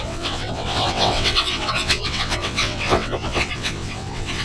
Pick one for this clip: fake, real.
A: fake